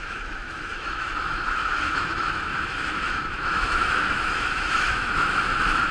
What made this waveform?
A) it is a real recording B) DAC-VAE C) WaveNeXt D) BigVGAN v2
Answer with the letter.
B